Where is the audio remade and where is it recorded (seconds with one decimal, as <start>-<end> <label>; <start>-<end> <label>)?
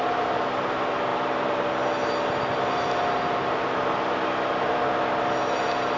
0.0-6.0 recorded